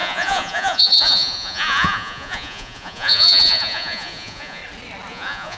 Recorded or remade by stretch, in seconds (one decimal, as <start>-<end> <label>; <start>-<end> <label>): 0.0-4.6 remade; 4.6-5.1 recorded; 5.1-5.6 remade